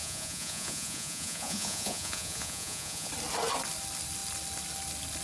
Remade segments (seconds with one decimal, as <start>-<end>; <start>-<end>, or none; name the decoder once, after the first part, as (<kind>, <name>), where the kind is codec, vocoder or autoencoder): 0.0-3.1 (vocoder, Vocos)